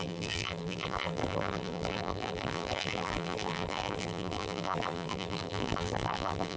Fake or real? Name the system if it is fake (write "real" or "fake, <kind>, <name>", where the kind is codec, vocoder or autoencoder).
fake, vocoder, BigVGAN v2